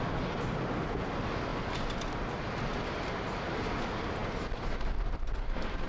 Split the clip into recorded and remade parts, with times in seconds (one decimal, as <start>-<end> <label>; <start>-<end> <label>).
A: 0.0-5.9 recorded